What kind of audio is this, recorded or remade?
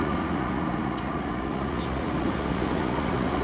remade